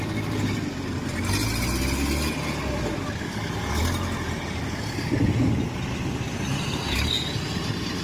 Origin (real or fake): real